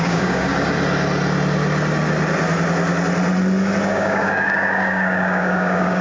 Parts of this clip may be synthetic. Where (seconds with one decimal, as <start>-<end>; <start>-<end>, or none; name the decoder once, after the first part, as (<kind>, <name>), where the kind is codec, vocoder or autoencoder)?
0.0-0.5 (codec, DAC); 3.9-6.0